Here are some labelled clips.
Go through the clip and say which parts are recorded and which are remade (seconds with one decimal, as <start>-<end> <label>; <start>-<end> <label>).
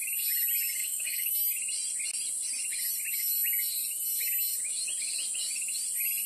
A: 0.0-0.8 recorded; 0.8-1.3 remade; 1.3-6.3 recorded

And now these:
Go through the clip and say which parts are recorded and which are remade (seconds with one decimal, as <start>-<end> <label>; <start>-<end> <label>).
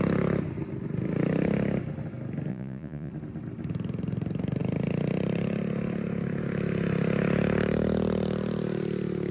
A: 0.0-2.5 recorded; 2.5-3.1 remade; 3.1-9.3 recorded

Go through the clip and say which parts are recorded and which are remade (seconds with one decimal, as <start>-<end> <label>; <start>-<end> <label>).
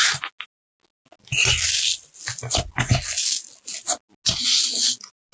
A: 0.0-5.3 recorded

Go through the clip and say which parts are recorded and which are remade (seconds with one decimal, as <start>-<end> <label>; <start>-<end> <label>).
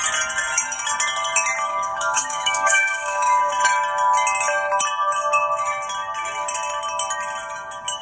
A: 0.0-1.7 recorded; 1.7-3.5 remade; 3.5-8.0 recorded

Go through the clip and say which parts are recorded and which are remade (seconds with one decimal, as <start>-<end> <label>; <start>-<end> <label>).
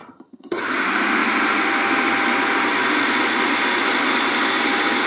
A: 0.0-0.6 remade; 0.6-5.1 recorded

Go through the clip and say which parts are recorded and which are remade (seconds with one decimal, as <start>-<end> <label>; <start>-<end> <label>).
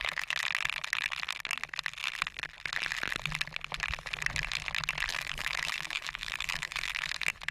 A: 0.0-5.1 recorded; 5.1-7.1 remade; 7.1-7.5 recorded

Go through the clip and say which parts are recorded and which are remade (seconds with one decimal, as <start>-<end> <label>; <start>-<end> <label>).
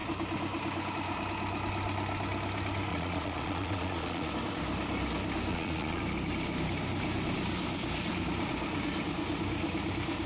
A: 0.0-2.9 recorded; 2.9-4.3 remade; 4.3-5.5 recorded; 5.5-6.0 remade; 6.0-10.3 recorded